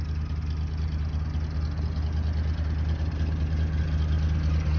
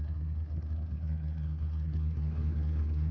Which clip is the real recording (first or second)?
first